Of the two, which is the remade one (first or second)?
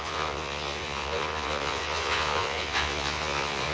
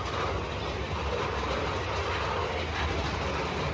first